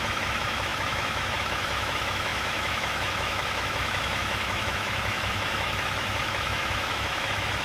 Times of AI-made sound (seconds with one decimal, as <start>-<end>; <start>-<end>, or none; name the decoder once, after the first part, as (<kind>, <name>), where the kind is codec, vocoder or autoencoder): 0.0-7.6 (autoencoder, DAC-VAE)